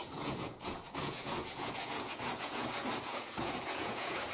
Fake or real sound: fake